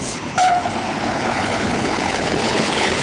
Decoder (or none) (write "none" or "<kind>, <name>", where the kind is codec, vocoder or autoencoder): codec, HILCodec